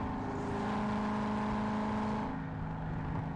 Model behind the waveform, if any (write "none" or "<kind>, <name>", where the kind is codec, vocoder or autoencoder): none